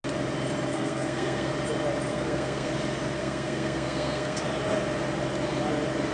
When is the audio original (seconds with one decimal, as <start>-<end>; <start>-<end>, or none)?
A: 0.0-0.7; 1.5-2.1; 2.7-3.2; 4.4-6.1